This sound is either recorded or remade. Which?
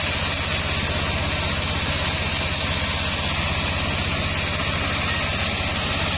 recorded